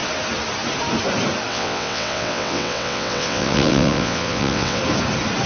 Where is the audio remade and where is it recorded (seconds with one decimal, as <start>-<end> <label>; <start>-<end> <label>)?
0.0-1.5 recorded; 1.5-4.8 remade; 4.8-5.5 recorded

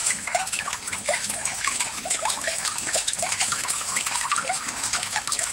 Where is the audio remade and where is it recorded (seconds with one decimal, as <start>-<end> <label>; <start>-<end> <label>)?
0.0-5.5 remade

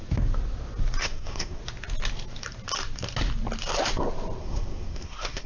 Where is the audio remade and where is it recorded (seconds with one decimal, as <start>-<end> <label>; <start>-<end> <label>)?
0.0-1.0 recorded; 1.0-1.6 remade; 1.6-4.4 recorded; 4.4-5.5 remade

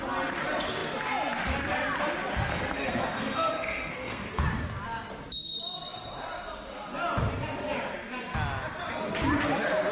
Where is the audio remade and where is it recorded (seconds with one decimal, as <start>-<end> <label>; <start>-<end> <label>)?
0.0-2.5 recorded; 2.5-4.4 remade; 4.4-9.9 recorded

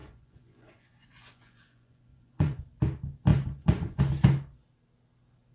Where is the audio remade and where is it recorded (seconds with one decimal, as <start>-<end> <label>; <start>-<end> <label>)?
0.0-2.6 remade; 2.6-3.3 recorded; 3.3-4.0 remade; 4.0-5.5 recorded

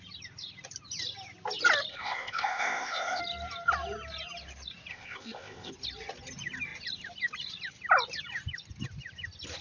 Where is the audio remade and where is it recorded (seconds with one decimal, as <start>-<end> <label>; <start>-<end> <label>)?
0.0-1.9 recorded; 1.9-3.2 remade; 3.2-4.9 recorded; 4.9-5.7 remade; 5.7-9.6 recorded